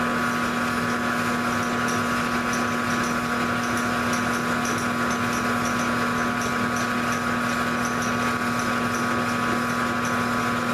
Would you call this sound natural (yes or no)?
yes